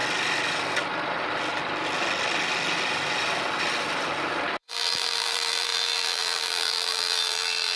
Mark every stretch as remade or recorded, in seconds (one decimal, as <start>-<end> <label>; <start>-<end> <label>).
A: 0.0-4.7 recorded; 4.7-7.8 remade